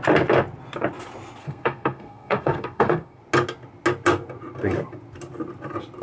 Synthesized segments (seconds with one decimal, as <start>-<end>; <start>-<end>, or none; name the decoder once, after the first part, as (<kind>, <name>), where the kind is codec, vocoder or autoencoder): 1.4-3.2 (codec, SNAC)